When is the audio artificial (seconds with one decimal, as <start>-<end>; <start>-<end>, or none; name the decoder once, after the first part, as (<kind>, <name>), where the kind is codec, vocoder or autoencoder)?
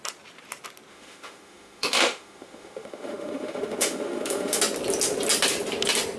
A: 0.9-4.6 (autoencoder, DAC-VAE)